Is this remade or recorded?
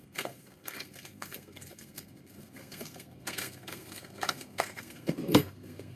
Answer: remade